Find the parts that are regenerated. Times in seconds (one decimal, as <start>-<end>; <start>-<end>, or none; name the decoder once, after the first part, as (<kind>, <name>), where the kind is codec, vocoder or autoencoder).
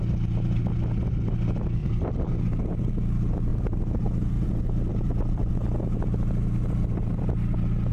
1.8-2.3 (vocoder, BigVGAN v2); 3.5-5.5